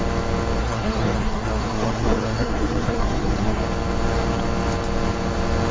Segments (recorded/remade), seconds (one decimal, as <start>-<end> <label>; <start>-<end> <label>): 0.0-0.6 recorded; 0.6-3.6 remade; 3.6-5.7 recorded